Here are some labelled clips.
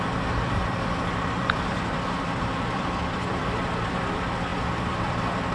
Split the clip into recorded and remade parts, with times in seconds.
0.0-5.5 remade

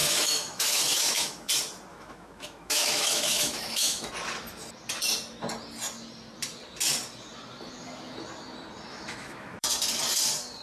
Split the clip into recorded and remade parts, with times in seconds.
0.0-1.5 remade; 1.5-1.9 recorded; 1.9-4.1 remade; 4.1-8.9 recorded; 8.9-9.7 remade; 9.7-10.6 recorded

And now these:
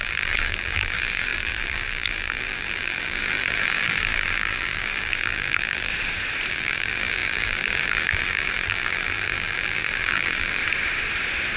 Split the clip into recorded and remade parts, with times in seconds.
0.0-5.9 remade; 5.9-6.5 recorded; 6.5-10.6 remade; 10.6-11.6 recorded

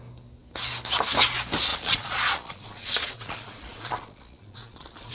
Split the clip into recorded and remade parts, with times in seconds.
0.0-1.7 recorded; 1.7-5.1 remade

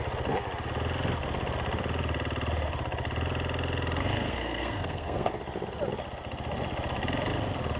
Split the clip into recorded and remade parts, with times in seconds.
0.0-4.0 recorded; 4.0-5.3 remade; 5.3-7.8 recorded